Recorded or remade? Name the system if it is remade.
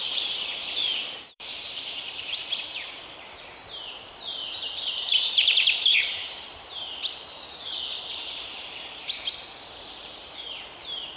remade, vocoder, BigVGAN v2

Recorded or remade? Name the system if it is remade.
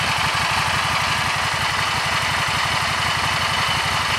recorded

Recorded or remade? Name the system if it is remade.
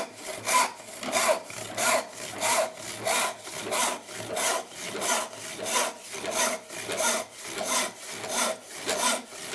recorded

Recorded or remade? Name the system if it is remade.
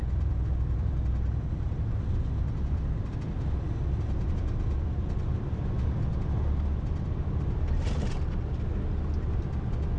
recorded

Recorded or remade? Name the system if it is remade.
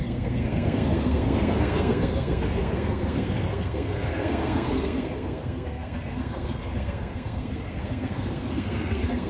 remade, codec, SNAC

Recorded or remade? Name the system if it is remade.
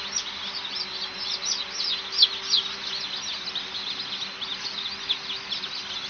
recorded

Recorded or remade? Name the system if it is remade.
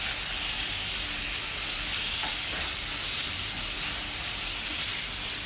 recorded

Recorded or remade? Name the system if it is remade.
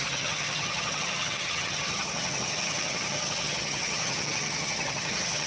remade, vocoder, HiFi-GAN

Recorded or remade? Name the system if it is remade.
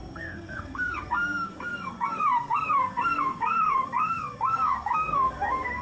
remade, codec, SNAC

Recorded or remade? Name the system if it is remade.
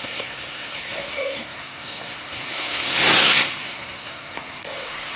remade, codec, SNAC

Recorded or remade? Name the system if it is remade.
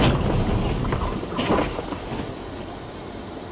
recorded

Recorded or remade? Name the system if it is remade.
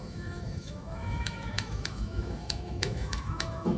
remade, autoencoder, DAC-VAE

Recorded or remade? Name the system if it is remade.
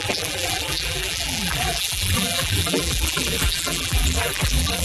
remade, vocoder, BigVGAN v2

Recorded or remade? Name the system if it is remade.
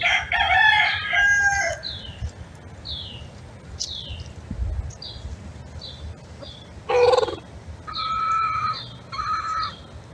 recorded